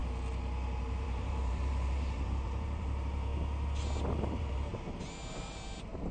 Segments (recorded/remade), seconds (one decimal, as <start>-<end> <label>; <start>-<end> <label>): 0.0-0.8 recorded; 0.8-3.3 remade; 3.3-4.2 recorded; 4.2-4.7 remade; 4.7-6.1 recorded